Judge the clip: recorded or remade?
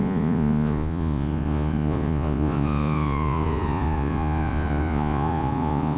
remade